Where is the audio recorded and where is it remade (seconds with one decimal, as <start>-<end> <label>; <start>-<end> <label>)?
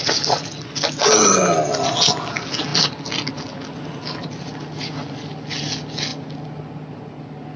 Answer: 0.0-7.6 recorded